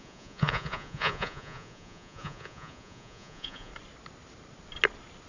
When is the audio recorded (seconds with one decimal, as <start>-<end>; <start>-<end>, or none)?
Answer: 3.7-5.3